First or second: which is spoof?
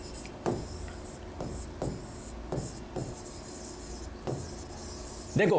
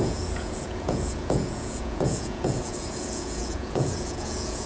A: second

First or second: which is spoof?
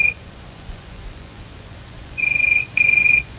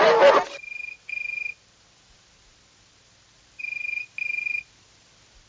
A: first